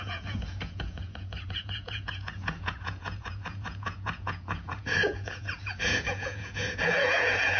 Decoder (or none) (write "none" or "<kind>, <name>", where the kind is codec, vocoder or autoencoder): vocoder, Vocos